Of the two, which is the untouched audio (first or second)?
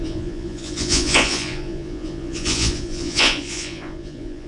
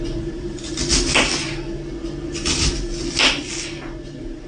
second